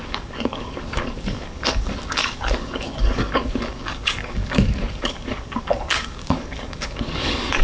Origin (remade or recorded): remade